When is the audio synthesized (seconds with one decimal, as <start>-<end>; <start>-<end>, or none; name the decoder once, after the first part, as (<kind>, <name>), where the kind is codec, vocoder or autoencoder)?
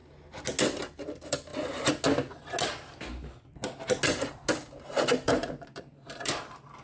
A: 1.0-1.5 (vocoder, BigVGAN v2); 4.7-6.8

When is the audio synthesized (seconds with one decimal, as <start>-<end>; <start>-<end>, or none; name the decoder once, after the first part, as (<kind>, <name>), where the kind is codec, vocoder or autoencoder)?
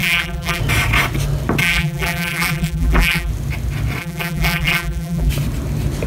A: 0.0-0.6 (vocoder, BigVGAN v2); 1.6-3.3; 4.0-5.3